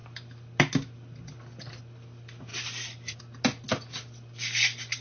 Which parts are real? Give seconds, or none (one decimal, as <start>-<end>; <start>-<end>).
0.0-5.0